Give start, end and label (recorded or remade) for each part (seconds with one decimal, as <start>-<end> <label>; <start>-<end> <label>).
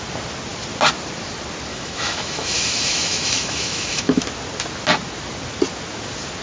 0.0-1.7 recorded; 1.7-4.2 remade; 4.2-6.4 recorded